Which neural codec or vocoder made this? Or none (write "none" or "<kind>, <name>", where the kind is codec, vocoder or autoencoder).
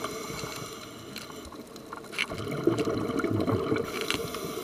none